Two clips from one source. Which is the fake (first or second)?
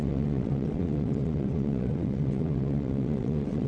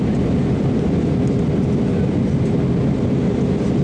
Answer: first